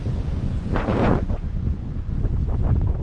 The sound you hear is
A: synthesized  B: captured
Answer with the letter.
A